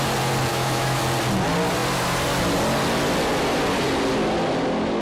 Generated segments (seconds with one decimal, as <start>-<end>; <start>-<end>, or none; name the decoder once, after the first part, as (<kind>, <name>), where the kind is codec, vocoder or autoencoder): 0.5-1.0 (autoencoder, DAC-VAE)